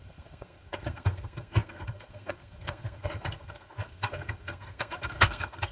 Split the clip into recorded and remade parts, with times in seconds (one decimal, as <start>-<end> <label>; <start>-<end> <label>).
0.0-5.7 remade